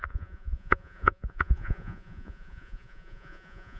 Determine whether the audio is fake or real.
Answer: fake